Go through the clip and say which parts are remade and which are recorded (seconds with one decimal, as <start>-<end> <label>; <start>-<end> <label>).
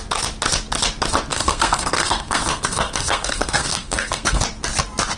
0.0-1.3 recorded; 1.3-4.4 remade; 4.4-5.2 recorded